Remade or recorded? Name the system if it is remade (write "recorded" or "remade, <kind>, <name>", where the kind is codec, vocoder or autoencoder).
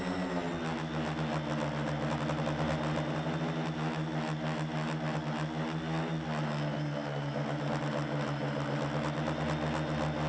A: recorded